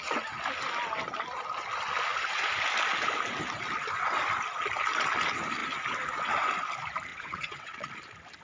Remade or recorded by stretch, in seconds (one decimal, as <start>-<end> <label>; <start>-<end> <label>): 0.0-7.1 recorded; 7.1-7.9 remade; 7.9-8.4 recorded